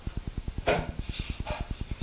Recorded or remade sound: remade